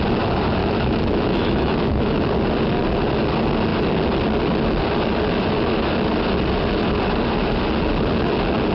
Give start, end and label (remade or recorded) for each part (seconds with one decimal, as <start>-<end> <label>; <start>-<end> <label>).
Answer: 0.0-0.6 recorded; 0.6-2.1 remade; 2.1-8.7 recorded